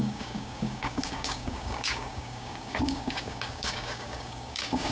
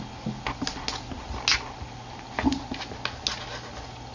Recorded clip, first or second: second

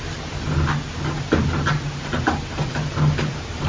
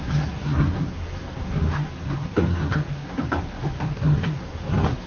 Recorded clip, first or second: first